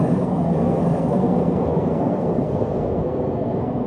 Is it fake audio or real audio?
fake